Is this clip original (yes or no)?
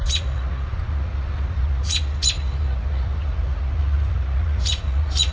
no